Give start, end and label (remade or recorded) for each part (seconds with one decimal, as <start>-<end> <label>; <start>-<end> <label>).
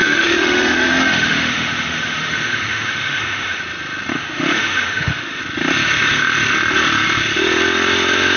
0.0-3.6 remade; 3.6-4.1 recorded; 4.1-5.4 remade; 5.4-8.4 recorded